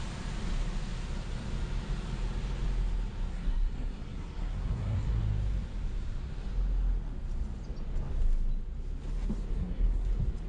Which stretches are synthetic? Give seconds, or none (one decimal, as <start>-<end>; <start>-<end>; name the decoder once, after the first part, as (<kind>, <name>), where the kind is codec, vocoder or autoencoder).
3.3-5.2 (codec, SNAC); 9.5-10.1